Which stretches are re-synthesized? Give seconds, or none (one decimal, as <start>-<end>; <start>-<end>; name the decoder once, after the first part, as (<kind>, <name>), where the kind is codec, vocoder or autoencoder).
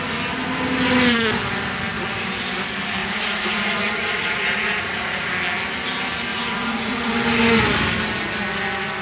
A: 3.0-5.3 (vocoder, Vocos); 6.3-7.1